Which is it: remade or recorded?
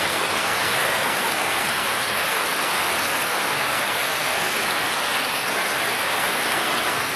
remade